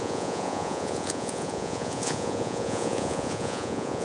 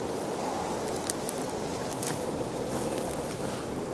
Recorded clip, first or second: second